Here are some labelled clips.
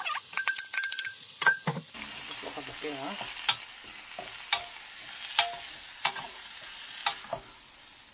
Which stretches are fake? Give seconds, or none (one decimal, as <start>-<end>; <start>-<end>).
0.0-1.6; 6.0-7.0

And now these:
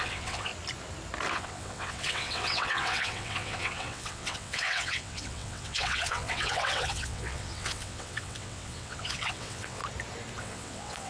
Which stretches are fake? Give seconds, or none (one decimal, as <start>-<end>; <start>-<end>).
0.0-0.5; 1.3-9.8; 10.4-11.1

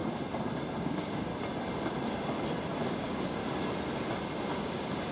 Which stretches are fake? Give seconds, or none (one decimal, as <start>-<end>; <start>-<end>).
0.8-1.3; 2.9-3.4; 4.5-5.1